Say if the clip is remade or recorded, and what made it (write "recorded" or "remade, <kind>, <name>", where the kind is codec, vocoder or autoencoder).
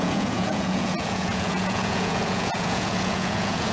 remade, vocoder, Vocos